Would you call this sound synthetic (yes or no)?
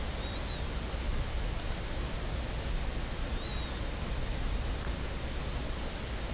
no